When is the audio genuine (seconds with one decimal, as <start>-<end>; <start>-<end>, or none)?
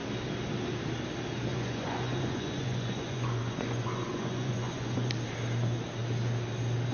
0.0-1.5; 5.1-6.9